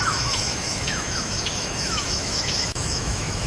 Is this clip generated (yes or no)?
yes